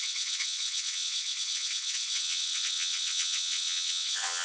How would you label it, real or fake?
fake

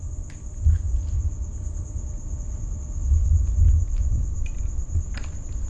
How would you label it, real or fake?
real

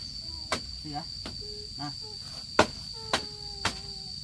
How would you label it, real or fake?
real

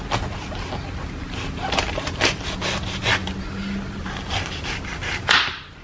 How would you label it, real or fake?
real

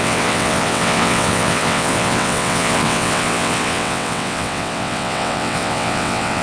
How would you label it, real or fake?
fake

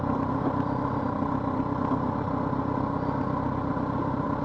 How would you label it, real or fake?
real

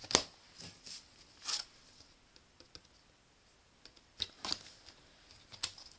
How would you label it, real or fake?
real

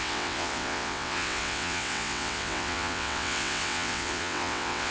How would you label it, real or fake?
fake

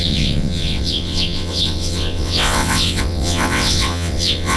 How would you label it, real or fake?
fake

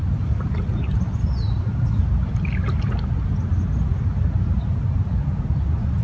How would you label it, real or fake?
real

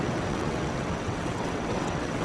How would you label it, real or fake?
fake